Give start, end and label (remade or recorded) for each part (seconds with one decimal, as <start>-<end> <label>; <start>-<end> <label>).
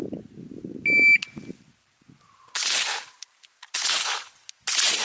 0.0-5.0 recorded